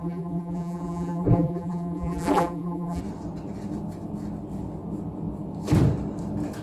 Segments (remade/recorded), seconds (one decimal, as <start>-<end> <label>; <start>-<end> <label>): 0.0-3.0 remade; 3.0-6.6 recorded